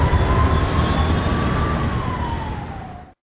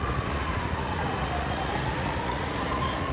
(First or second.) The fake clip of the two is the second